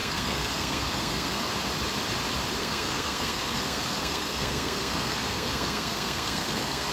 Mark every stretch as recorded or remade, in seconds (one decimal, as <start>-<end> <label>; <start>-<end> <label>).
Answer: 0.0-1.5 remade; 1.5-2.6 recorded; 2.6-6.9 remade